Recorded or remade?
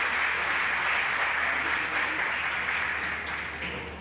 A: recorded